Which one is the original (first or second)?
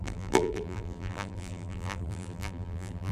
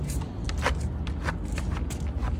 second